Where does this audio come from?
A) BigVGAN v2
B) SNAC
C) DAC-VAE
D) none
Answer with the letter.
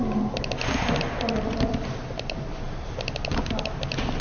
D